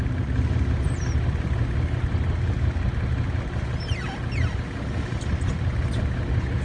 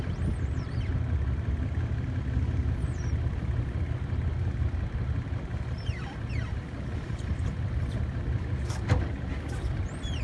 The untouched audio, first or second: first